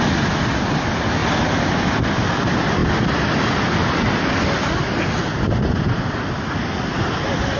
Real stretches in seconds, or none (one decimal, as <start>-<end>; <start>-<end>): 0.0-7.6